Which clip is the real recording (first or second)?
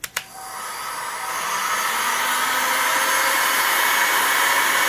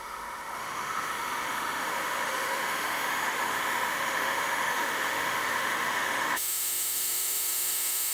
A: first